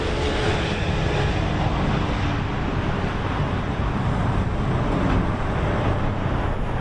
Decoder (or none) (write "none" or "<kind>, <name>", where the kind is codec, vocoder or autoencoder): none